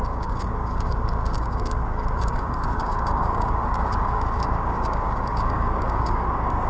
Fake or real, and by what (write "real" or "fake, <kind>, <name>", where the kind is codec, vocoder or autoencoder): fake, codec, DAC